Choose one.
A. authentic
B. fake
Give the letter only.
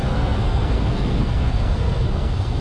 B